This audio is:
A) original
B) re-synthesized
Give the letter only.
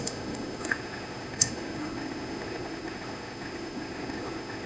B